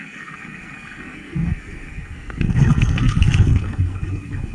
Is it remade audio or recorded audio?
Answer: remade